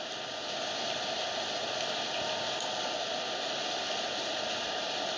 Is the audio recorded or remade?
recorded